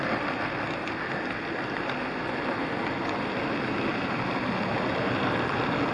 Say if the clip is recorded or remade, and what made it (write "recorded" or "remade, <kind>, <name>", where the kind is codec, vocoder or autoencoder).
recorded